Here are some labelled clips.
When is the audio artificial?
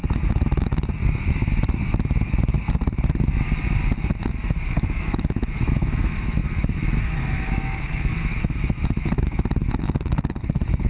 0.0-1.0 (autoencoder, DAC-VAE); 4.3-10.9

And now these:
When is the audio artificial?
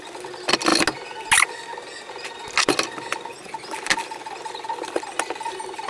none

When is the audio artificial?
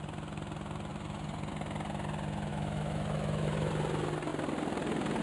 2.5-3.7 (autoencoder, DAC-VAE)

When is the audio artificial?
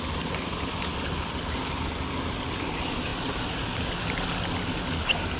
none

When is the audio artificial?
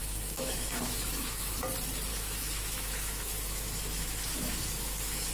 0.0-1.6 (autoencoder, DAC-VAE); 2.1-5.3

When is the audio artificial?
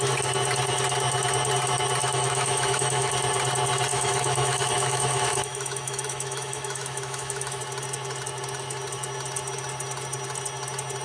2.0-3.1 (autoencoder, DAC-VAE); 3.9-7.6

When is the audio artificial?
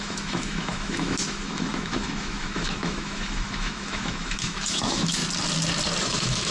0.0-5.2 (autoencoder, DAC-VAE); 6.0-6.5